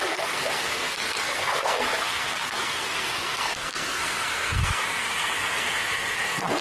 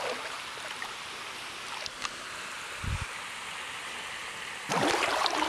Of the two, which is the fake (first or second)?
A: first